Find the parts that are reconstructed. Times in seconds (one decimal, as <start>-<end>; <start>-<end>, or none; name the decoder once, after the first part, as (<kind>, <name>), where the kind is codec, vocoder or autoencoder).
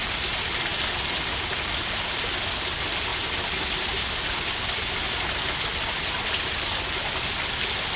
none